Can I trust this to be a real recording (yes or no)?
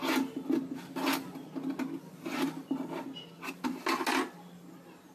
yes